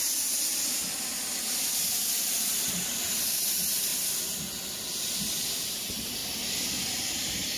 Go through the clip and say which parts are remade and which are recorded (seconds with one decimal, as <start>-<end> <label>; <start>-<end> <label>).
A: 0.0-0.8 remade; 0.8-2.7 recorded; 2.7-3.9 remade; 3.9-5.6 recorded; 5.6-6.2 remade; 6.2-7.0 recorded; 7.0-7.6 remade